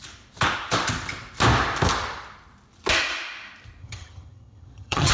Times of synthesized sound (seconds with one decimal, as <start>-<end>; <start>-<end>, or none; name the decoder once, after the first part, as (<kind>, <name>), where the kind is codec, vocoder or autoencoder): 3.8-5.1 (vocoder, HiFi-GAN)